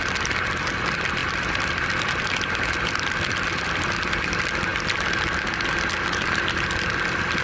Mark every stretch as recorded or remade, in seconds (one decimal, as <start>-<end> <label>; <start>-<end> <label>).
0.0-7.4 recorded